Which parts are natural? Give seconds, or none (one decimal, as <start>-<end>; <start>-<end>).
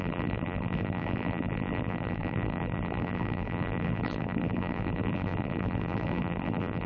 none